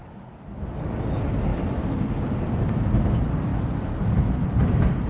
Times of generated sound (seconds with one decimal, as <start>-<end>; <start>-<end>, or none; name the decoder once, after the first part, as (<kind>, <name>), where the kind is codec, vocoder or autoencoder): 1.5-3.1 (vocoder, BigVGAN v2); 3.5-5.1